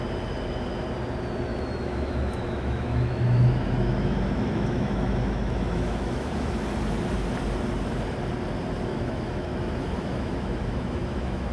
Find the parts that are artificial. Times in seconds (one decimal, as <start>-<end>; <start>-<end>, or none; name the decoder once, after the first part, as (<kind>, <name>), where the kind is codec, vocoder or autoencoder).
1.5-6.6 (autoencoder, DAC-VAE); 8.9-11.5